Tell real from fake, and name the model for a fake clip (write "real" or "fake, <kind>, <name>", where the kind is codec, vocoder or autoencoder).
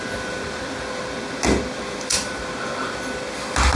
real